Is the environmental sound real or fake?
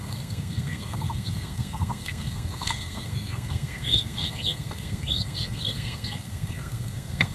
fake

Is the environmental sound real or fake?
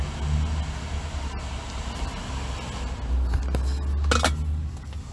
real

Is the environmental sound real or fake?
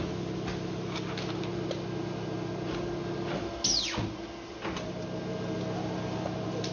real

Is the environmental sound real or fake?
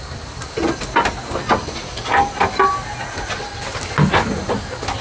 real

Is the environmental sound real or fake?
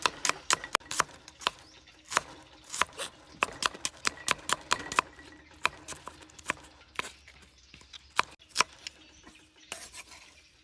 real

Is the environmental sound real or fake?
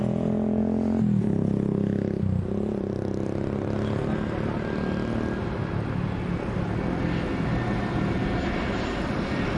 real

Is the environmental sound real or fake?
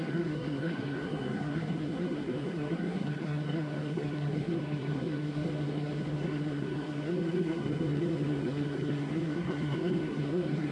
fake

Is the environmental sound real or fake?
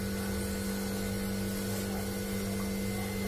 real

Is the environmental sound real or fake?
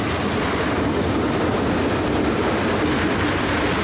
real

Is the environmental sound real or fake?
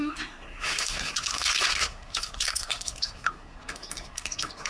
fake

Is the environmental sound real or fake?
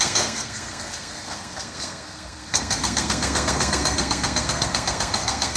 fake